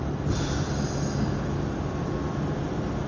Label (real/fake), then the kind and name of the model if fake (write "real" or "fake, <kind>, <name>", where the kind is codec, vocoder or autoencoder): real